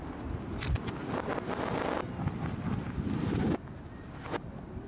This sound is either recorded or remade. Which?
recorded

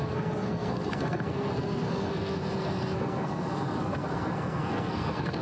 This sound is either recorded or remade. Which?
remade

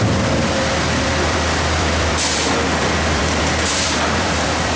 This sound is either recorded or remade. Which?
remade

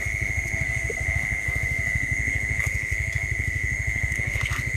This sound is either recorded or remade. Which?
remade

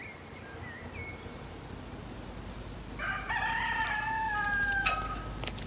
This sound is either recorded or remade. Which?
recorded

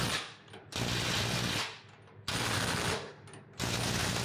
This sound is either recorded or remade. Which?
recorded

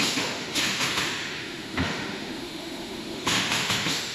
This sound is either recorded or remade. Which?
remade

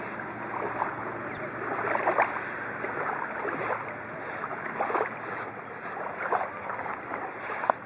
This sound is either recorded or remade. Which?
recorded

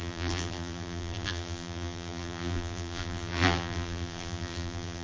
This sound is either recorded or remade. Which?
remade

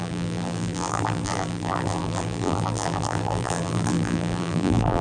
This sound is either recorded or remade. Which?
remade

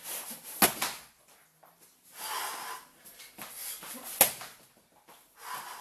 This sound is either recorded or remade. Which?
recorded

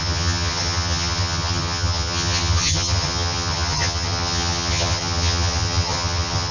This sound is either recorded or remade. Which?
remade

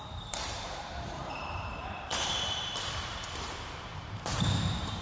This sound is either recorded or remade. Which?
remade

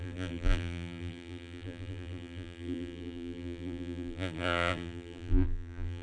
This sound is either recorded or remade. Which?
remade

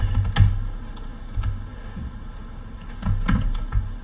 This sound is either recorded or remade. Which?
recorded